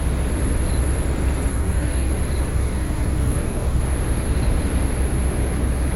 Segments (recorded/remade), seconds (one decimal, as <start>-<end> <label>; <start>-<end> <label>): 0.0-1.5 recorded; 1.5-2.1 remade; 2.1-2.5 recorded; 2.5-3.8 remade; 3.8-6.0 recorded